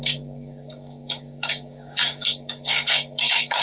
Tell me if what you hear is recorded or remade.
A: remade